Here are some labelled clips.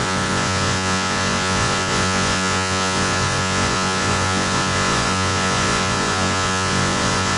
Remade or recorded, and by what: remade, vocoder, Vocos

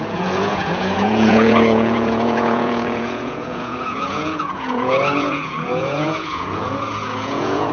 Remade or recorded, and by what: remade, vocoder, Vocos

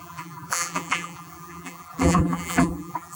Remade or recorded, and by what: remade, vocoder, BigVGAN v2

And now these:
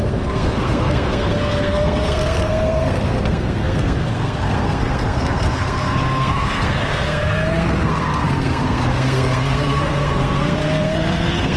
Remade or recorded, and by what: remade, codec, SNAC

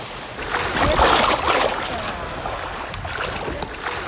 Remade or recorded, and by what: recorded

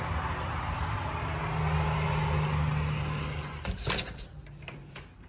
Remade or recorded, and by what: recorded